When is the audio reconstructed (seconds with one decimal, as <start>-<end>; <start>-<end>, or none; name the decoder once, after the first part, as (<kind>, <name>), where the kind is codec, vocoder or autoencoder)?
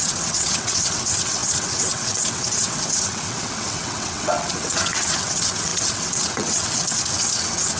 0.0-7.8 (vocoder, WaveNeXt)